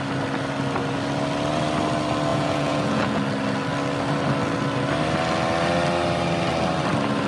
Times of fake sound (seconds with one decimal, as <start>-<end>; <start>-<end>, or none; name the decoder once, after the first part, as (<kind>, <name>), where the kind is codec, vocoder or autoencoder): 2.3-3.2 (vocoder, Vocos)